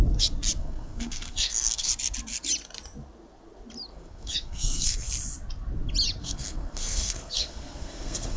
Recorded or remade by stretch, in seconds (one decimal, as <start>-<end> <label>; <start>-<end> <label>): 0.0-0.6 recorded; 0.6-1.9 remade; 1.9-3.9 recorded; 3.9-5.1 remade; 5.1-6.2 recorded; 6.2-8.4 remade